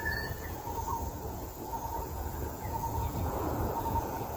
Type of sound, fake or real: fake